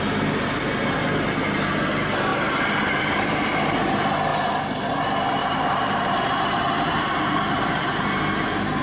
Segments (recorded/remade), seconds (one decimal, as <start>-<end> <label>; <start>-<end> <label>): 0.0-2.3 recorded; 2.3-3.9 remade; 3.9-5.4 recorded; 5.4-8.2 remade; 8.2-8.8 recorded

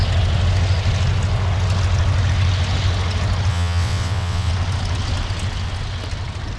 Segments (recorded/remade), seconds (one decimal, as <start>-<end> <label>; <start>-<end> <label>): 0.0-3.5 recorded; 3.5-4.5 remade; 4.5-6.6 recorded